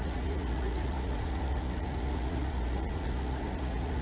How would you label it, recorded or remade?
remade